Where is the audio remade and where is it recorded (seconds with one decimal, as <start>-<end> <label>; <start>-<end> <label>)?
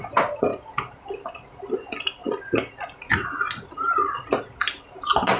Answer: 0.0-5.4 recorded